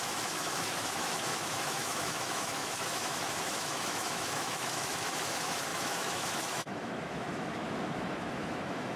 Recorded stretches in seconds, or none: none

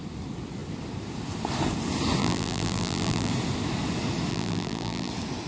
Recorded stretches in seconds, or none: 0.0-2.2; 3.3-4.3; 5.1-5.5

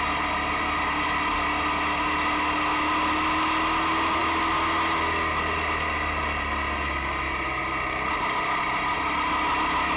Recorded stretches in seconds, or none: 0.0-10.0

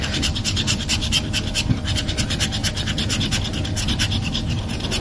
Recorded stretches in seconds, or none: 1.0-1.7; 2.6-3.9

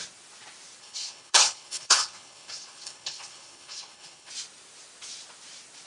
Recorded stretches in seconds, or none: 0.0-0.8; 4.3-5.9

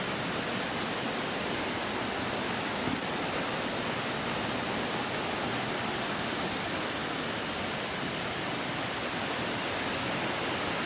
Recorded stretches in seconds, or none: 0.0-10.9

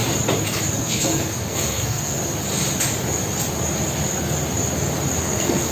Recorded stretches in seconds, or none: 0.0-0.8; 2.2-5.2